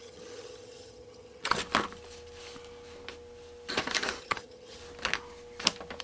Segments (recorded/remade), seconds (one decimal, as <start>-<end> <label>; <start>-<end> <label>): 0.0-1.6 remade; 1.6-4.2 recorded; 4.2-4.8 remade; 4.8-6.0 recorded